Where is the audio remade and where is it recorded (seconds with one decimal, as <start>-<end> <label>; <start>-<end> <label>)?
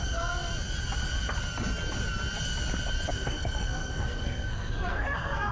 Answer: 0.0-0.5 remade; 0.5-3.1 recorded; 3.1-5.5 remade